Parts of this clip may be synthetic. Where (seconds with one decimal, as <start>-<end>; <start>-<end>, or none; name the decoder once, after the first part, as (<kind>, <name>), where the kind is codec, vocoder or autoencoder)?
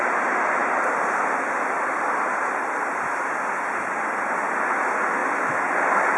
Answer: 0.6-2.9 (vocoder, BigVGAN v2)